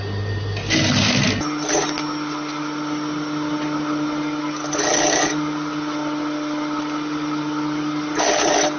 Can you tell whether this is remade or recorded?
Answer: recorded